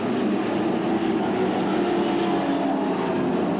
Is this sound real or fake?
real